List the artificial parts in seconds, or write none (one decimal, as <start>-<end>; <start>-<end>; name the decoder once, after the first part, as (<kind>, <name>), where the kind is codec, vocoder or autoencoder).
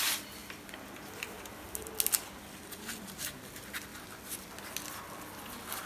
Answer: 0.4-1.5 (vocoder, BigVGAN v2); 3.9-4.5